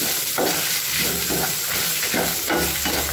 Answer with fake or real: real